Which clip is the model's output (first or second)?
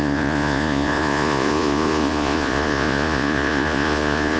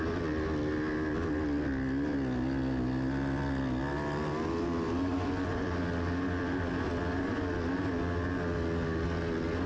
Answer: first